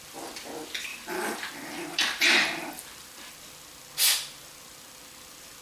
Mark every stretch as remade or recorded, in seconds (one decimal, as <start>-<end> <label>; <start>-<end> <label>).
0.0-0.9 recorded; 0.9-3.3 remade; 3.3-5.6 recorded